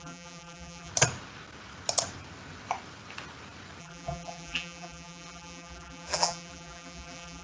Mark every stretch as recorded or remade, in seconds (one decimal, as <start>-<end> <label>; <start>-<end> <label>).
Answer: 0.0-0.9 remade; 0.9-3.8 recorded; 3.8-7.4 remade